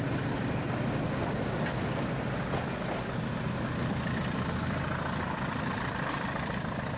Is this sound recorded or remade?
recorded